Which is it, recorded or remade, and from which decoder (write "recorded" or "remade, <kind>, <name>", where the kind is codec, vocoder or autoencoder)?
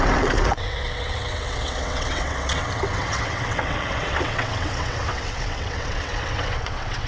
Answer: remade, vocoder, WaveNeXt